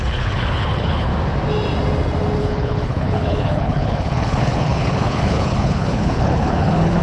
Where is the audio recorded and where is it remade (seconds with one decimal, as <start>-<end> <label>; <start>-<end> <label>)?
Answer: 0.0-1.1 remade; 1.1-2.4 recorded; 2.4-7.0 remade